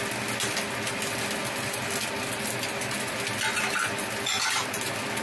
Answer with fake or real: real